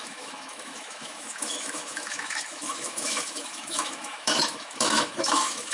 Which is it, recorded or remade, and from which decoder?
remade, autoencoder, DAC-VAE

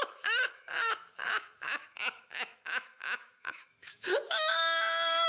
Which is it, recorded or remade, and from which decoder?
remade, autoencoder, DAC-VAE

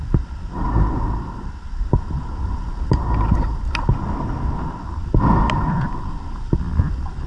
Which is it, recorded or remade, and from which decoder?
recorded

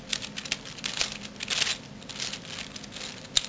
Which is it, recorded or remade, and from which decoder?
recorded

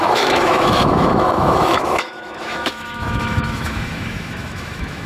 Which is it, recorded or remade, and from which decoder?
remade, autoencoder, DAC-VAE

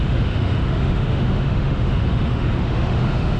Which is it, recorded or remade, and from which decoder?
remade, autoencoder, DAC-VAE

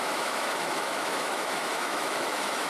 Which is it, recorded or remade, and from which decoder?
remade, autoencoder, DAC-VAE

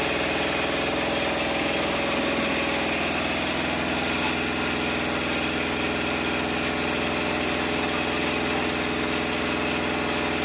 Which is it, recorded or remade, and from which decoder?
recorded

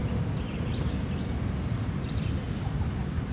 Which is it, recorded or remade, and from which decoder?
recorded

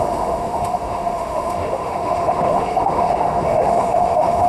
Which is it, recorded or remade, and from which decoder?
remade, autoencoder, DAC-VAE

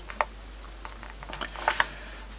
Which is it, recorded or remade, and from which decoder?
recorded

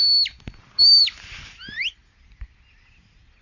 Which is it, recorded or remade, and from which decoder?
recorded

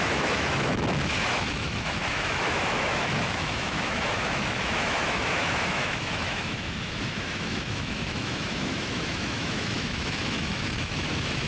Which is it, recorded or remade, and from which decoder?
remade, autoencoder, DAC-VAE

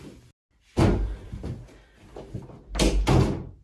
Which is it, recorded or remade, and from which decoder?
recorded